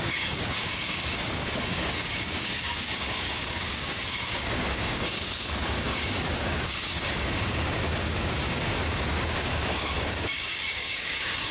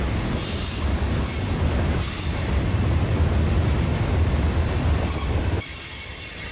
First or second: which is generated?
first